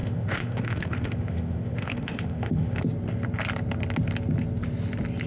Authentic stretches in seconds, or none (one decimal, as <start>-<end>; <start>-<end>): 2.8-5.3